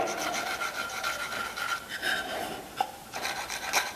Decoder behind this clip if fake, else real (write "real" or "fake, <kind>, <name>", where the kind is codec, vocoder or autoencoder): real